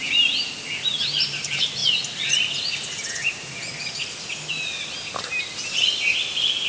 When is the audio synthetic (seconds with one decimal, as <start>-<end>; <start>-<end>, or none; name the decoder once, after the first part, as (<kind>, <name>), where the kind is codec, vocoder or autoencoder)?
none